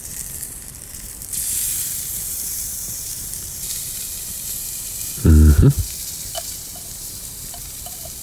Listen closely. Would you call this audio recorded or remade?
remade